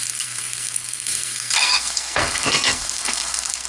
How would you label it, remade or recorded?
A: remade